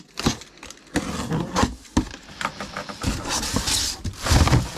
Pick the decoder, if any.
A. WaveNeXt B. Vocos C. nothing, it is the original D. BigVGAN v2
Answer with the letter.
C